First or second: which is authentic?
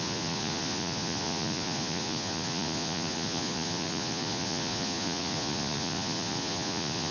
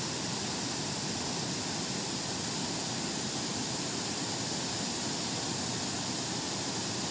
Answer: second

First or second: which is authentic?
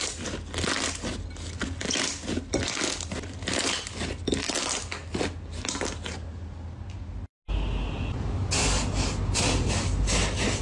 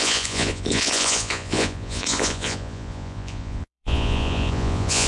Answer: first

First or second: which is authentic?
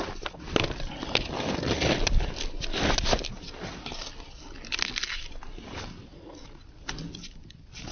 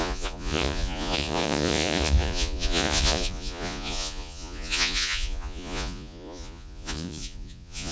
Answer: first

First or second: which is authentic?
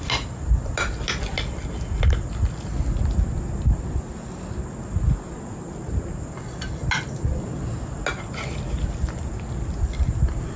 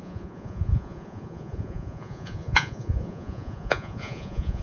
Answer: first